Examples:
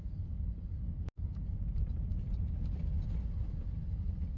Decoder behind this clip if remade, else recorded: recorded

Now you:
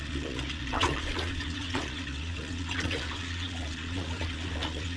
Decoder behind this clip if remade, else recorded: remade, vocoder, Vocos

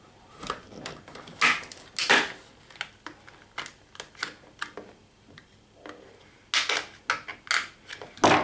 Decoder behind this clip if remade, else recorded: recorded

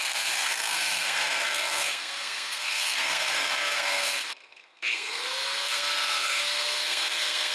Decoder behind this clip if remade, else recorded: remade, codec, SNAC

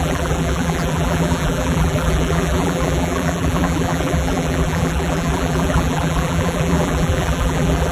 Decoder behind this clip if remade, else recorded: remade, vocoder, BigVGAN v2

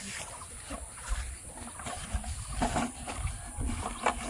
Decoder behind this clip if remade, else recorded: recorded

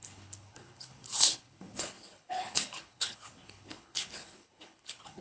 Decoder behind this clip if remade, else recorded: remade, codec, HILCodec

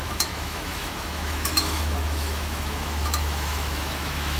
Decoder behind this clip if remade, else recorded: remade, autoencoder, DAC-VAE